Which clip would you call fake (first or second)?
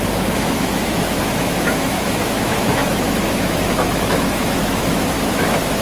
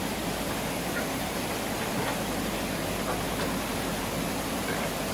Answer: first